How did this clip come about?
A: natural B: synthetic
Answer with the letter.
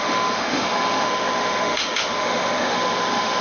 B